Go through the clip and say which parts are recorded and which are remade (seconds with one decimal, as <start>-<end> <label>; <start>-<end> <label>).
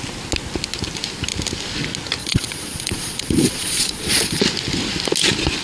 0.0-2.2 recorded; 2.2-4.4 remade; 4.4-5.6 recorded